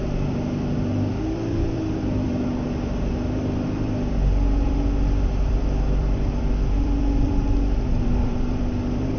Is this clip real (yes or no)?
no